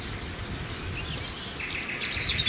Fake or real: real